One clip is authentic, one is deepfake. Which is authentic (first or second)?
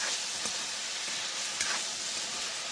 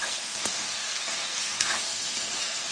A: first